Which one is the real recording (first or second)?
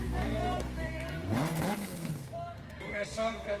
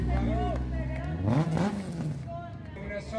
second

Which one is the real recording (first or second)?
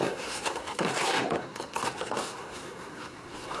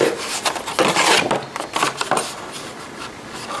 second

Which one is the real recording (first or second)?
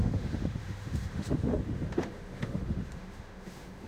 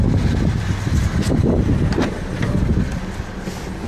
second